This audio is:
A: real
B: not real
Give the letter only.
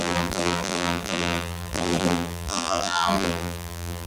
B